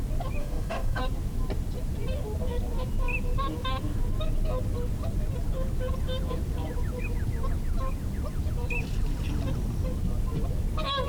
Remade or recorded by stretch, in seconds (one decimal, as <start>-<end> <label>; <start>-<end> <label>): 0.0-0.4 recorded; 0.4-1.0 remade; 1.0-11.1 recorded